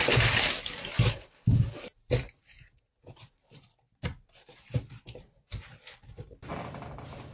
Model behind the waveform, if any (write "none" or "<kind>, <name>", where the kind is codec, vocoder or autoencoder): none